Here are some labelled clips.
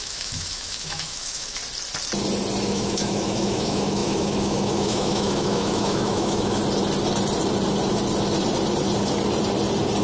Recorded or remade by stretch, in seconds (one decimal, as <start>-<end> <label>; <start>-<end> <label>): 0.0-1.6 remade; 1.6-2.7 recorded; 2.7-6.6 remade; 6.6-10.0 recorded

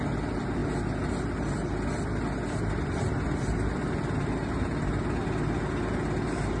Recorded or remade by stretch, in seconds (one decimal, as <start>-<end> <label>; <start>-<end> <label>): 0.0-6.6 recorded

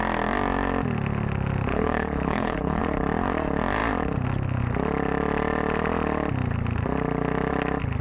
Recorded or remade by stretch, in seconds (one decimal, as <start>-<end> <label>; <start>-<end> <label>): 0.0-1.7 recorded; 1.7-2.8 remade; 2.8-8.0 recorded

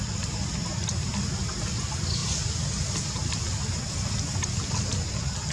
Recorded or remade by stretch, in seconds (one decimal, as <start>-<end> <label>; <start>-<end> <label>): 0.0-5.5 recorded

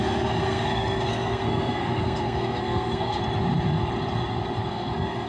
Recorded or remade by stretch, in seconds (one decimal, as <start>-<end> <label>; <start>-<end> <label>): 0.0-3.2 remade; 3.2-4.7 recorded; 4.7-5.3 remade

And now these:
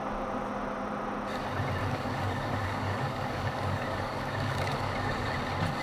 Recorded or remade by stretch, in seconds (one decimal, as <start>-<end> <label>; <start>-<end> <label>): 0.0-1.8 recorded; 1.8-5.3 remade; 5.3-5.8 recorded

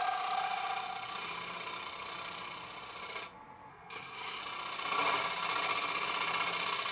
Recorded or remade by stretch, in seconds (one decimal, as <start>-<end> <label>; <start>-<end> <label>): 0.0-3.7 recorded; 3.7-4.4 remade; 4.4-6.9 recorded

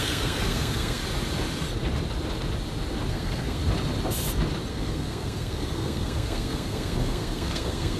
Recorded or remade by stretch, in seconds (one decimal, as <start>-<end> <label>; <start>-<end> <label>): 0.0-1.0 remade; 1.0-3.1 recorded; 3.1-3.6 remade; 3.6-4.7 recorded; 4.7-8.0 remade